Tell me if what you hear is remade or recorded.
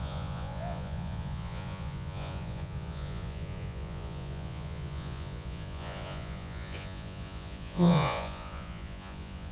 remade